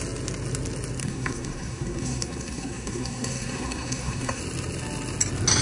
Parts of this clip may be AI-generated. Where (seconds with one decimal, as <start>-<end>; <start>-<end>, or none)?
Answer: 1.0-4.4